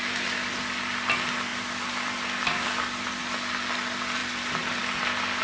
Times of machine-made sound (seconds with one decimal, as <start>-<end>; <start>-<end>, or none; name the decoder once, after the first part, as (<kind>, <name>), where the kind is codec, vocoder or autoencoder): 1.5-3.2 (vocoder, BigVGAN v2); 4.2-4.8